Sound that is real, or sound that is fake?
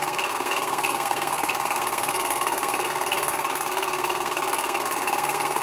fake